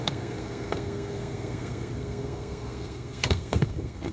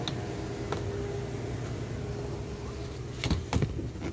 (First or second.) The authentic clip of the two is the second